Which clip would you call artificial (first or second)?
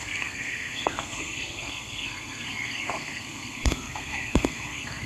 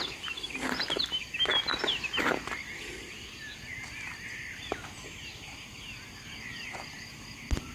first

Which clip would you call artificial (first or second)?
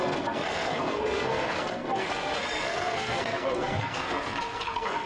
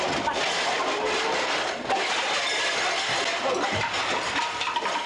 first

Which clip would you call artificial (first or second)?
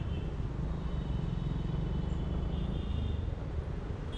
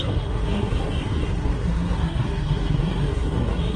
second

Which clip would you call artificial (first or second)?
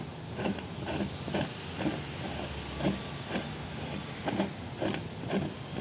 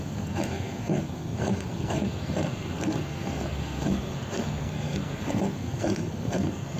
second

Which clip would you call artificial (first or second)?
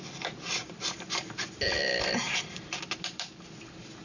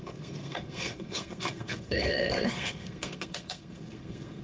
second